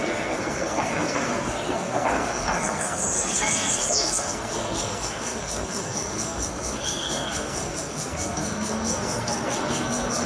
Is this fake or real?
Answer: fake